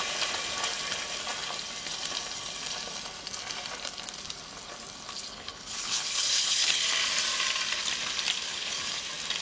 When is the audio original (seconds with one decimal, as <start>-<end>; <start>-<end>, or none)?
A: 0.0-5.3; 6.8-8.5; 9.0-9.4